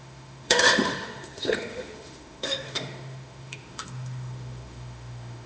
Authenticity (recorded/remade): remade